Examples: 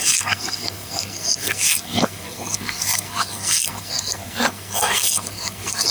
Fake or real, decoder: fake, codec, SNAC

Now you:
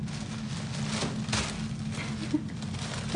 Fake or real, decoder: real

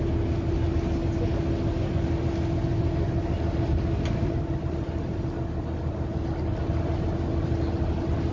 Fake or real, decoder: real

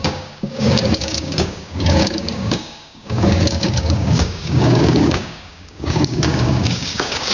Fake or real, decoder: fake, codec, DAC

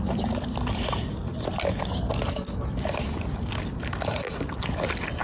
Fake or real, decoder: real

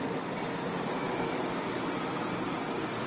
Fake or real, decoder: real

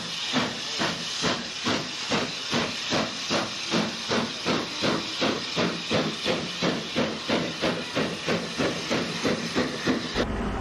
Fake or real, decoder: real